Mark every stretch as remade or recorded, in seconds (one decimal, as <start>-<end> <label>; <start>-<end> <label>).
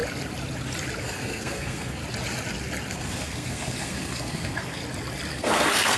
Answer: 0.0-1.0 recorded; 1.0-2.0 remade; 2.0-2.9 recorded; 2.9-4.8 remade; 4.8-5.3 recorded; 5.3-6.0 remade